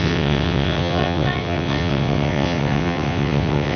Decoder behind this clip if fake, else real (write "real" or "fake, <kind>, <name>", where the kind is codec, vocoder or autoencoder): fake, vocoder, WaveNeXt